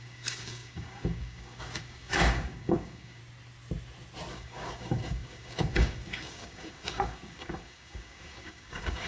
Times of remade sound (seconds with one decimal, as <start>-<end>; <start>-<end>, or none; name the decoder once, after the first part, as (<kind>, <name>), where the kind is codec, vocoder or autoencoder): 0.0-3.2 (codec, DAC); 4.3-9.1